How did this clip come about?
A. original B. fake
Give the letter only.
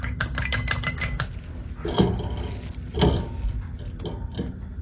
A